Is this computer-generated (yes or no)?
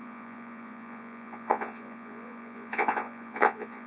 yes